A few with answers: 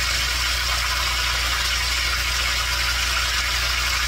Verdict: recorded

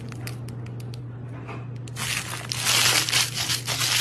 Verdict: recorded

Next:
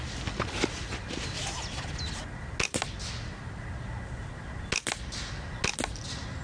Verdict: recorded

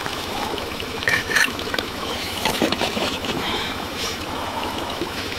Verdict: remade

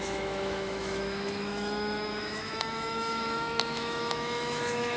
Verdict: remade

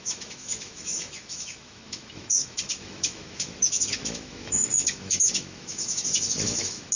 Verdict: remade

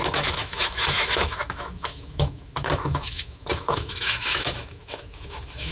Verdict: remade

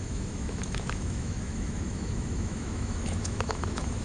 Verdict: remade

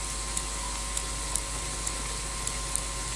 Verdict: recorded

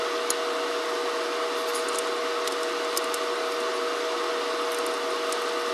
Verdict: recorded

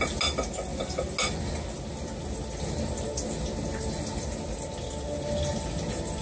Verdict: recorded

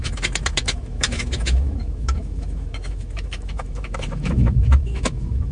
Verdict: remade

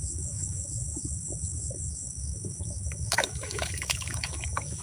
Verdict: remade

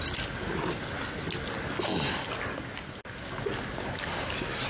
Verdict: recorded